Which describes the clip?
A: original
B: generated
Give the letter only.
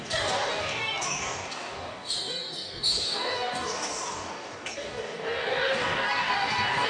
B